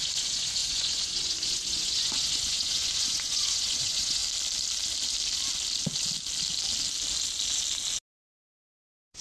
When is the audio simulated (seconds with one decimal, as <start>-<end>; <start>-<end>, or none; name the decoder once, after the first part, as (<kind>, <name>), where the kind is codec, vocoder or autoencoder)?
0.0-4.2 (vocoder, Vocos); 8.2-9.2